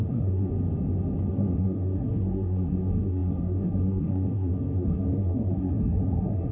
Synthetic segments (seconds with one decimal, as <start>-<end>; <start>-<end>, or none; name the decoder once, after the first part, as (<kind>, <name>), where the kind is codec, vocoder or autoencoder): 0.0-0.5 (codec, SNAC); 1.3-6.5